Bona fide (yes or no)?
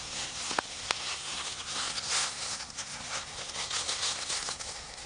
no